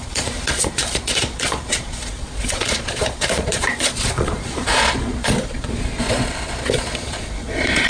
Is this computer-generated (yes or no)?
yes